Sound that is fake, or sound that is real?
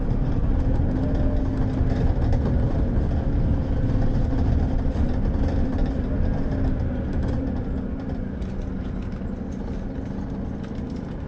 real